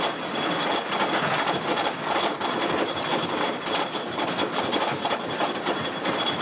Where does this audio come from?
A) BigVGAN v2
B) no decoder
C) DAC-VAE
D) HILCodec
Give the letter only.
B